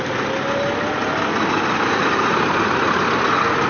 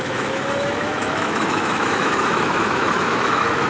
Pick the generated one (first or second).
second